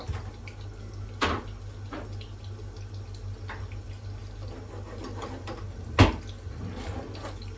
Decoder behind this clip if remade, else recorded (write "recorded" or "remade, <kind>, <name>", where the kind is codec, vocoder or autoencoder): recorded